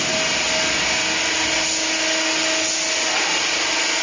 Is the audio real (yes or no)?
yes